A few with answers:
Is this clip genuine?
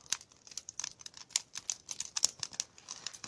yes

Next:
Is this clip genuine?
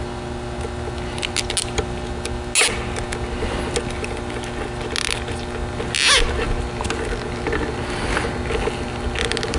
yes